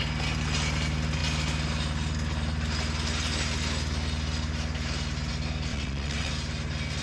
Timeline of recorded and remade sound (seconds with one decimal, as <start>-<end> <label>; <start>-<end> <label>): 0.0-5.7 recorded; 5.7-6.3 remade; 6.3-7.0 recorded